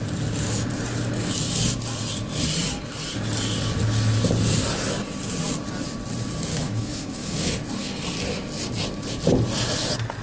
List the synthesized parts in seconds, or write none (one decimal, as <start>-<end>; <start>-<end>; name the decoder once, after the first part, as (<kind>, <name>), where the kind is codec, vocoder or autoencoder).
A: 6.5-7.5 (autoencoder, DAC-VAE)